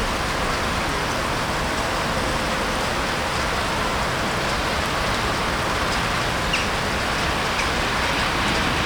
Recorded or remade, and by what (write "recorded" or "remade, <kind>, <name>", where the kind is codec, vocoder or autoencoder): recorded